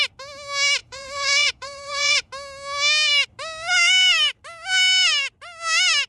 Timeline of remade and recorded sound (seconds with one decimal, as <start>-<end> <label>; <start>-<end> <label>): 0.0-0.8 recorded; 0.8-2.3 remade; 2.3-6.1 recorded